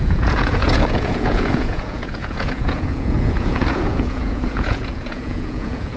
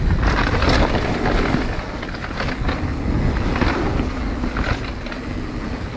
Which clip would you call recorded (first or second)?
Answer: second